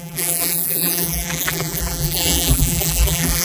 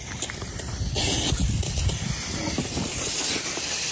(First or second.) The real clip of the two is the second